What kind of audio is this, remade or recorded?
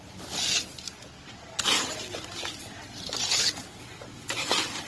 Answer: recorded